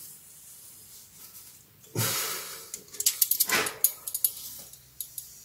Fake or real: real